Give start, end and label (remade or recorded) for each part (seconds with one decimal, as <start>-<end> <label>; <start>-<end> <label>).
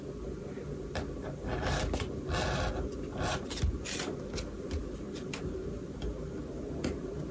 0.0-7.3 recorded